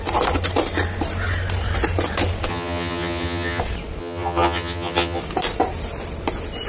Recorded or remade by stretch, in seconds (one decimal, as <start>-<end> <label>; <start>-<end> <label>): 0.0-2.5 recorded; 2.5-3.6 remade; 3.6-4.0 recorded; 4.0-5.2 remade; 5.2-6.7 recorded